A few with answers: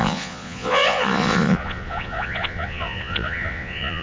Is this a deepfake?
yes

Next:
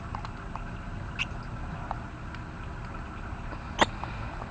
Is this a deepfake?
no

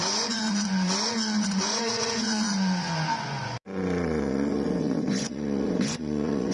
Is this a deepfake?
yes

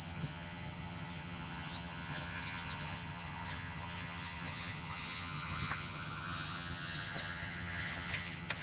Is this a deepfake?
yes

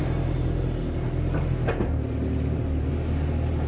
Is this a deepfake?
no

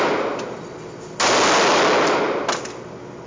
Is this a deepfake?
no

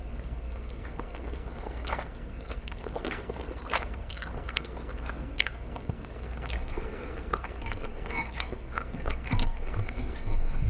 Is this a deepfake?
yes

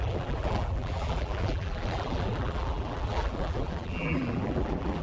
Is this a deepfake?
yes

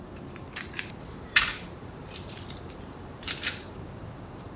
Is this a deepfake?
yes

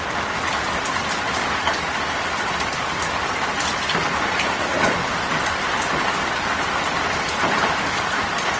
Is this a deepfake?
yes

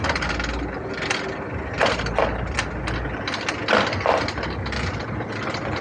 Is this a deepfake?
no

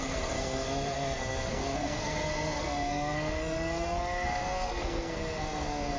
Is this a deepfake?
yes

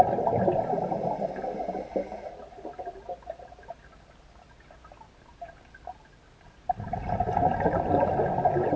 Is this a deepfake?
no